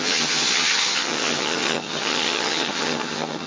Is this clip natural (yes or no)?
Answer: no